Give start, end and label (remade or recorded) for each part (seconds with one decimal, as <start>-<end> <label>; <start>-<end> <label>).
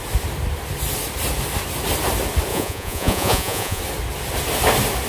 0.0-2.5 recorded; 2.5-3.8 remade; 3.8-5.1 recorded